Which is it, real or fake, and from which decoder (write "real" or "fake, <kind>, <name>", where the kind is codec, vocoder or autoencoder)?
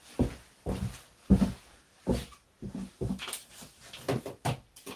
real